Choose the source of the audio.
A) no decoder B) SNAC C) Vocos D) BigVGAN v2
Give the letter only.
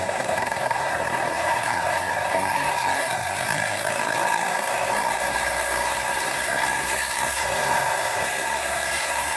B